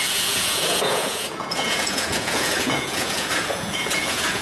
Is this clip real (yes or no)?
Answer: no